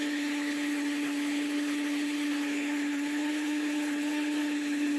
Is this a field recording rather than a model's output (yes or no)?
no